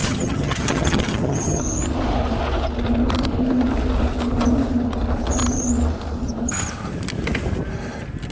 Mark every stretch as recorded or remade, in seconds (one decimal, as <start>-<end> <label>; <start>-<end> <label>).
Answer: 0.0-1.6 remade; 1.6-8.3 recorded